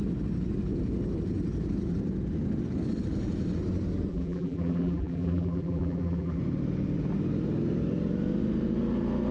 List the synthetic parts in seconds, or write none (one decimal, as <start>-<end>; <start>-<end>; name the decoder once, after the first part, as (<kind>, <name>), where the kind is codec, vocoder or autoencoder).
4.1-6.4 (vocoder, BigVGAN v2)